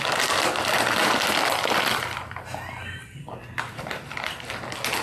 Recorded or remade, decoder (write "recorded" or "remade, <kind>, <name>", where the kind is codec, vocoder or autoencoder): recorded